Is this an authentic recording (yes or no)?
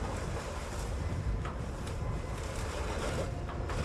yes